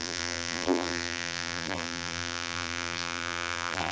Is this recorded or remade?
remade